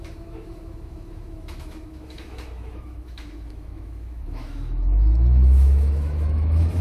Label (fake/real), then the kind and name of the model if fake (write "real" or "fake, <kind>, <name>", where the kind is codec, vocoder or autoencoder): fake, autoencoder, DAC-VAE